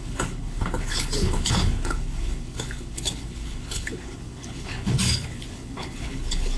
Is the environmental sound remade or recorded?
remade